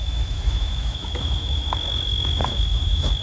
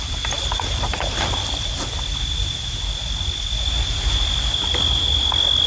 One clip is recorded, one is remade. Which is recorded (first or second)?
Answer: second